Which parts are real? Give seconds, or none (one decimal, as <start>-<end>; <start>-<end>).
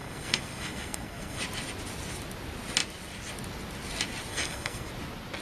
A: 1.4-4.3; 4.9-5.4